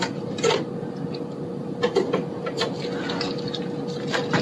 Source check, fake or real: real